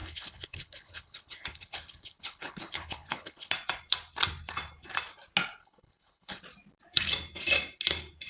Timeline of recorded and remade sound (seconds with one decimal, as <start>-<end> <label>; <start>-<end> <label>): 0.0-3.5 remade; 3.5-5.6 recorded; 5.6-6.4 remade; 6.4-8.3 recorded